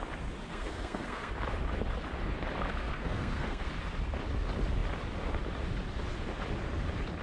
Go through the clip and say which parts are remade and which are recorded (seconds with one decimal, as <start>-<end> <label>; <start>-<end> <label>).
0.0-0.5 recorded; 0.5-1.3 remade; 1.3-2.8 recorded; 2.8-3.7 remade; 3.7-7.2 recorded

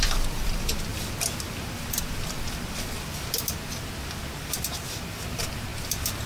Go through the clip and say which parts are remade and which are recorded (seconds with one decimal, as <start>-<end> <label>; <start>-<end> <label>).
0.0-6.3 recorded

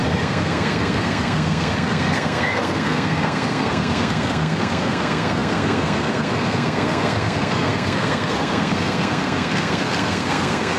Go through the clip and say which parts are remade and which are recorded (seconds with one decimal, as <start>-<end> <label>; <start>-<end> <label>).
0.0-10.8 remade

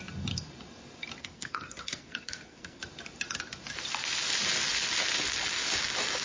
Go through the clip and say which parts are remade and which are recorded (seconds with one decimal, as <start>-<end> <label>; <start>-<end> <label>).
0.0-1.2 recorded; 1.2-2.8 remade; 2.8-6.2 recorded